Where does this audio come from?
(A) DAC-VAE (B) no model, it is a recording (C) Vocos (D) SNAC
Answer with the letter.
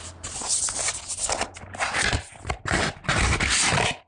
B